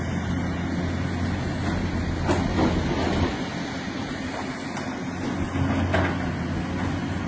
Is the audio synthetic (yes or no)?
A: no